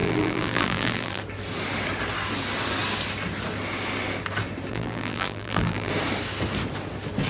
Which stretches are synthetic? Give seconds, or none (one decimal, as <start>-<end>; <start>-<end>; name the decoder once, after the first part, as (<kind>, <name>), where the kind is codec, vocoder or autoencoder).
0.0-1.2 (vocoder, BigVGAN v2); 4.7-5.9